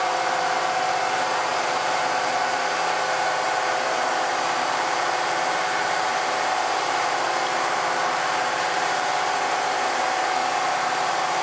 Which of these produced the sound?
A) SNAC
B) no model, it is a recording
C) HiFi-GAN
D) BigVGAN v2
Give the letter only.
D